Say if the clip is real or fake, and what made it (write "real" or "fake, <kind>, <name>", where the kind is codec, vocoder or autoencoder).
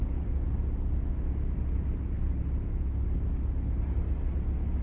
real